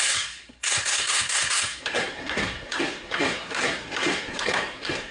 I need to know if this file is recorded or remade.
remade